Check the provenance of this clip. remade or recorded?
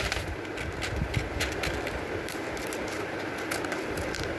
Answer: recorded